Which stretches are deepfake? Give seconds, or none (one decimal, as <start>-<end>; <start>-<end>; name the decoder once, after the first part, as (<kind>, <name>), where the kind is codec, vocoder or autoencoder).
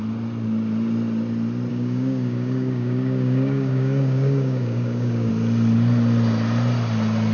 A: 1.7-5.3 (codec, DAC)